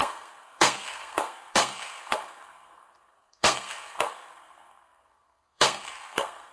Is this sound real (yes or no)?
no